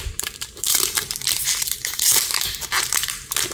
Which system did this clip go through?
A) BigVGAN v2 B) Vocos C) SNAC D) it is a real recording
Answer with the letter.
A